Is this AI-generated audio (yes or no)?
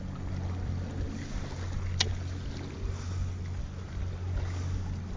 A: no